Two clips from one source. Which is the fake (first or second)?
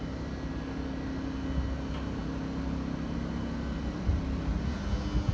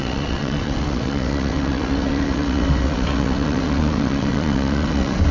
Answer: second